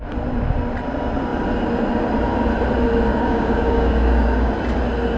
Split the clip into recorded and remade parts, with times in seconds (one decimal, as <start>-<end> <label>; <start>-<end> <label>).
0.0-3.1 recorded; 3.1-4.5 remade; 4.5-5.2 recorded